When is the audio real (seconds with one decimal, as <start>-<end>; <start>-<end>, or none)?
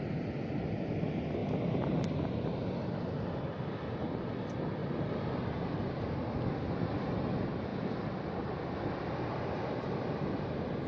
0.0-10.9